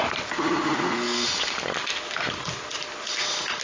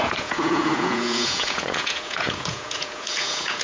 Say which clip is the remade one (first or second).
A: second